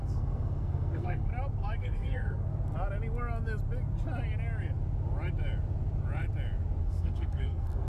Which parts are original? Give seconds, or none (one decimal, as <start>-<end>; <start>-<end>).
1.3-1.8; 2.5-6.8